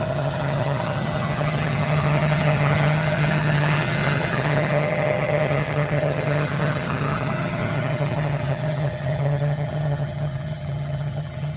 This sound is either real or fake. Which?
fake